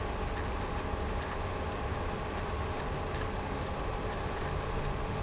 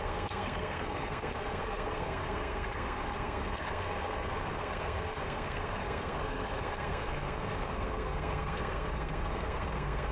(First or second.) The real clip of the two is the first